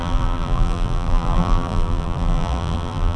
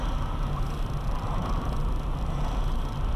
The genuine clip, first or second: second